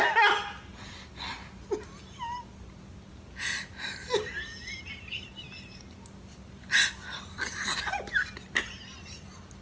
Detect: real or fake real